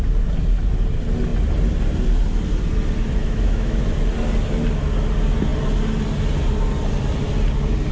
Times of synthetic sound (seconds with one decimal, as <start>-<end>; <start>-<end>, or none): 3.2-3.8